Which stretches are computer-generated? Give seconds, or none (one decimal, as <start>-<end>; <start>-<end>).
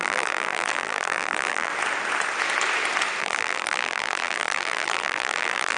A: 0.0-1.7; 3.2-5.8